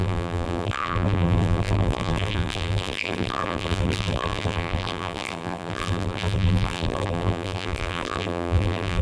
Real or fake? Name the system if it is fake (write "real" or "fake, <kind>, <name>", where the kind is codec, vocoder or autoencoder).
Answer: fake, vocoder, BigVGAN v2